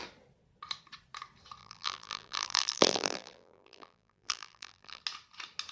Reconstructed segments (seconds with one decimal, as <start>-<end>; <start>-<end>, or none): 1.6-5.0